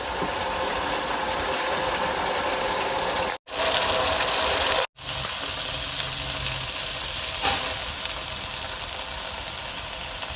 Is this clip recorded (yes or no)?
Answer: yes